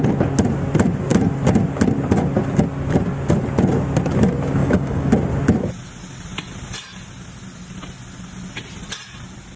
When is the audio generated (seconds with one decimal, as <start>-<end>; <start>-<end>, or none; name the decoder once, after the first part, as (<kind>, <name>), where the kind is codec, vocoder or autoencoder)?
4.6-5.1 (codec, DAC)